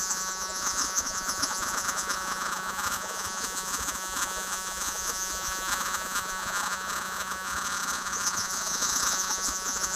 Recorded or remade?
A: remade